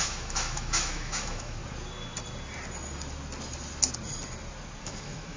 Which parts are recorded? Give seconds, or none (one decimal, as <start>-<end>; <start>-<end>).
1.6-4.8